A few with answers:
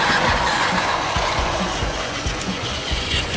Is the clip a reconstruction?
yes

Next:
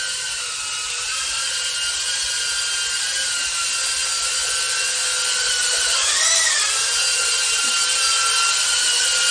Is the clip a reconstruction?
no